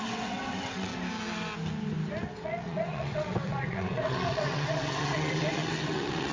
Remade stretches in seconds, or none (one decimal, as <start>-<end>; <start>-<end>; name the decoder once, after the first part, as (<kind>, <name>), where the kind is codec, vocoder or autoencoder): 0.0-0.9 (vocoder, WaveNeXt); 2.4-6.3